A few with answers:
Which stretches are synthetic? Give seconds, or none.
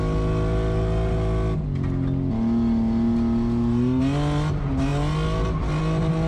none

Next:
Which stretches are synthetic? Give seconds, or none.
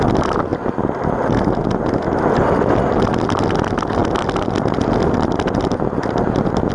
none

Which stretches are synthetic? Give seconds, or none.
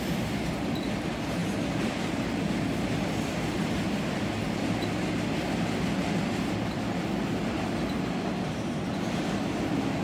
none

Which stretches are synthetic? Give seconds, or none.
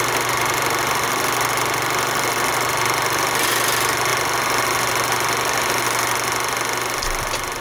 none